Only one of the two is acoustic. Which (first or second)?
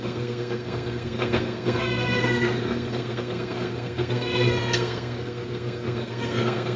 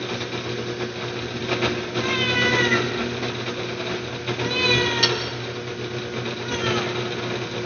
second